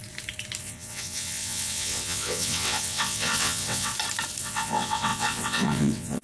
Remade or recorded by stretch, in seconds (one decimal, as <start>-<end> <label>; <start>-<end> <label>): 0.0-0.6 recorded; 0.6-3.9 remade; 3.9-4.4 recorded; 4.4-6.2 remade